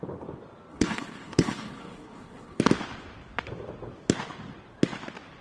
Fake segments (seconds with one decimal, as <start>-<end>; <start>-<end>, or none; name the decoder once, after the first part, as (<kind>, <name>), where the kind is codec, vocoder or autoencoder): 0.7-2.6 (codec, HILCodec)

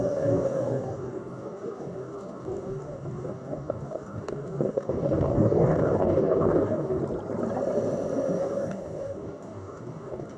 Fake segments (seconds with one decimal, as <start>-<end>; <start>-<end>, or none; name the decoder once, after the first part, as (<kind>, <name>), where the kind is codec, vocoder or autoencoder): 0.0-7.0 (codec, DAC); 8.4-10.4

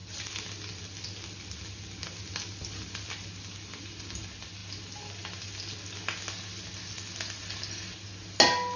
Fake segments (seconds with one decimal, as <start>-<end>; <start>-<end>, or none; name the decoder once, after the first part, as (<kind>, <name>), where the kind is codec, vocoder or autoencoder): none

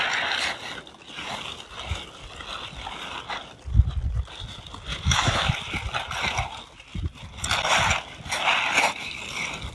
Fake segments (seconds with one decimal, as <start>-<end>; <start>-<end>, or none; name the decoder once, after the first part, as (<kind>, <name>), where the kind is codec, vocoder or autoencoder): 4.9-5.5 (autoencoder, DAC-VAE)

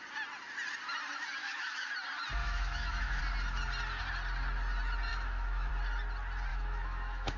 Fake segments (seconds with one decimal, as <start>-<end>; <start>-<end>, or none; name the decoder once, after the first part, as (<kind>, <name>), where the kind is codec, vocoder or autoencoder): 1.4-1.9 (autoencoder, DAC-VAE); 2.4-3.2; 5.1-5.7; 6.5-7.4

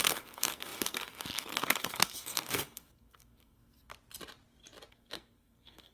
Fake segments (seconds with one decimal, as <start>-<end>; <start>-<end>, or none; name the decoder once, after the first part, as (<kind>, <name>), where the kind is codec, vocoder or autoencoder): 0.0-3.9 (codec, SNAC); 4.9-5.9